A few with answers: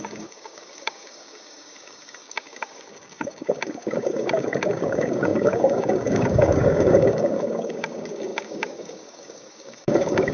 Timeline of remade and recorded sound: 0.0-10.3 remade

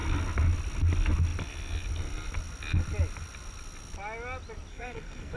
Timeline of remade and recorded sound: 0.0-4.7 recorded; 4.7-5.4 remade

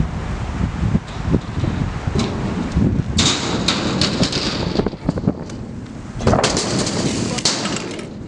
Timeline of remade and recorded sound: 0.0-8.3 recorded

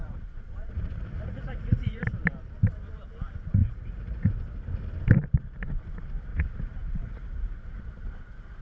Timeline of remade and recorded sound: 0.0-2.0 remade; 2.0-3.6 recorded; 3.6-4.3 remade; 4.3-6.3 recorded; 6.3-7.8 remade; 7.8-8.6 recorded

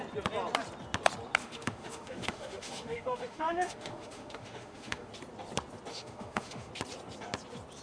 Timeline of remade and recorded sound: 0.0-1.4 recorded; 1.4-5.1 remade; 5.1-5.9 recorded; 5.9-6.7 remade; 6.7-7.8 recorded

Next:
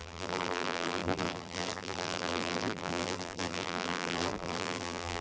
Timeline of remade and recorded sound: 0.0-5.2 remade